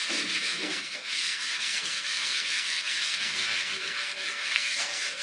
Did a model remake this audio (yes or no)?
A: yes